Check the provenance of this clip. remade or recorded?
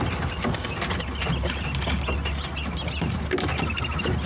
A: recorded